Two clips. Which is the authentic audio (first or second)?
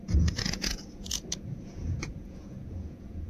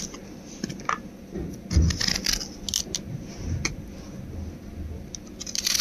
second